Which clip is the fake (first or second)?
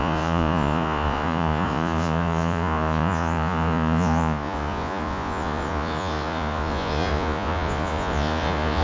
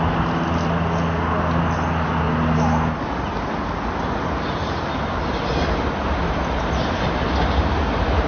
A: first